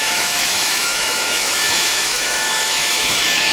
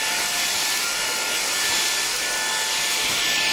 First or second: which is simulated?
first